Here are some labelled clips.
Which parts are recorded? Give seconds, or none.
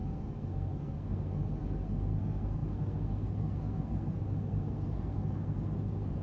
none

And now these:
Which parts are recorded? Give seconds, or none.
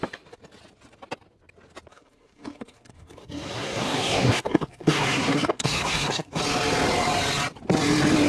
0.0-1.9; 6.4-8.3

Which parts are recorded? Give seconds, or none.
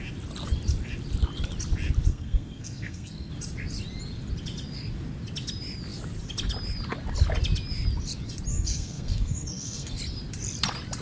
0.0-2.1; 3.3-8.5; 10.0-11.0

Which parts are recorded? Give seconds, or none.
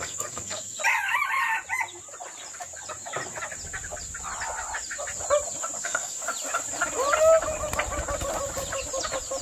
0.8-5.8; 6.2-9.4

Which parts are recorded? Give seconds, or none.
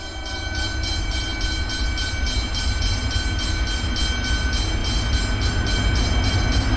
0.0-6.8